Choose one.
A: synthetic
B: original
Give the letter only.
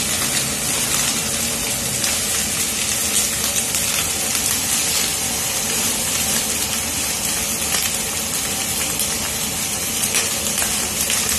B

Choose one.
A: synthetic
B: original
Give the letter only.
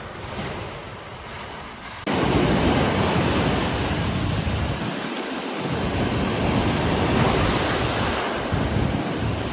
B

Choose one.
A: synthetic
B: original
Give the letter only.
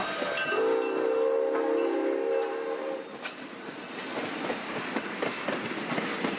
B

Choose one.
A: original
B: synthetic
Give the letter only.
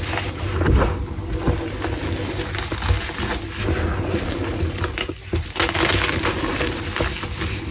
A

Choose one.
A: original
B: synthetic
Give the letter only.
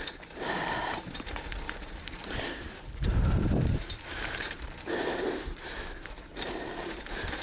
B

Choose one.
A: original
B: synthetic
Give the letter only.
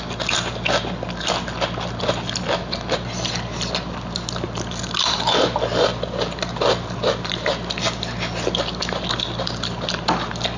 A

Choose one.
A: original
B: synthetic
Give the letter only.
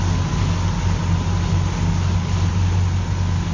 A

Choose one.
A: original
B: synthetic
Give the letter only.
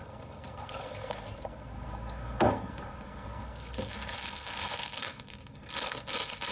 B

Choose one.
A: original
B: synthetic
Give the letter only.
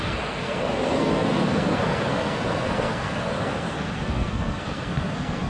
B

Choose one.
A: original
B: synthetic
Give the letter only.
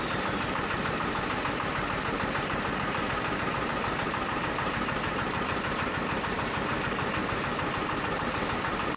B